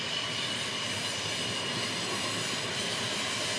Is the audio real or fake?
fake